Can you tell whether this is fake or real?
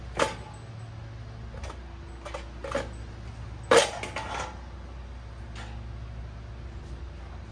real